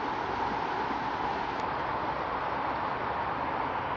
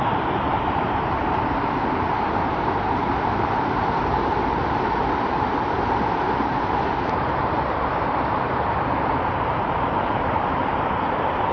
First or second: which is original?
first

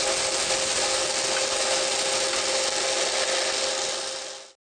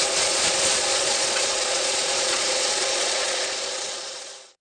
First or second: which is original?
first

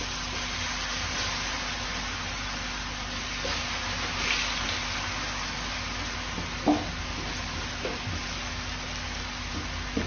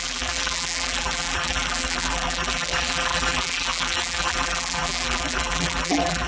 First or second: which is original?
first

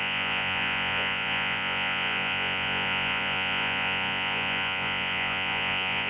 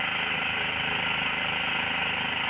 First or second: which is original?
second